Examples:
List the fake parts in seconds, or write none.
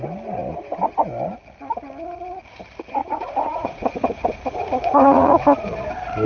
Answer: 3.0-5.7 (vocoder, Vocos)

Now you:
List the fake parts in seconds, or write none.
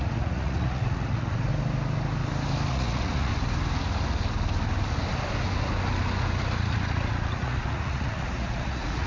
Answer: 0.0-1.5 (vocoder, Vocos); 2.7-3.3; 6.6-9.1